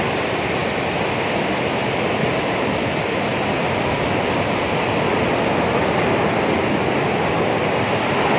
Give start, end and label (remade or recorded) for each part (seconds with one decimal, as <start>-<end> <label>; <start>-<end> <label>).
0.0-8.4 recorded